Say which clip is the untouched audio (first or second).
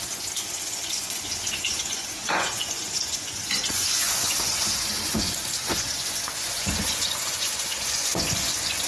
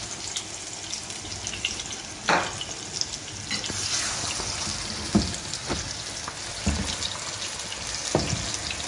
second